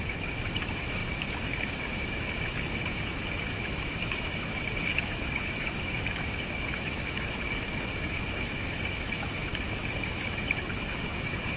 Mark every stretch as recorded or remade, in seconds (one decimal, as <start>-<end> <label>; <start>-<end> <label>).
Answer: 0.0-11.6 remade